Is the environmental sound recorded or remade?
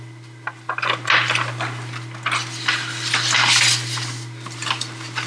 recorded